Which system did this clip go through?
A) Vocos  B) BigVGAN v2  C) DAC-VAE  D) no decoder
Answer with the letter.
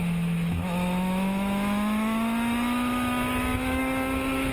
C